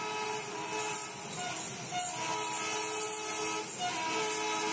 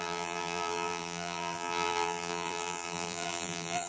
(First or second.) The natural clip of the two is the first